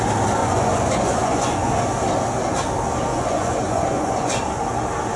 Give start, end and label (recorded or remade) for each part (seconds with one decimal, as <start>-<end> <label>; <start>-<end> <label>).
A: 0.0-0.4 recorded; 0.4-1.7 remade; 1.7-3.1 recorded; 3.1-4.4 remade; 4.4-5.2 recorded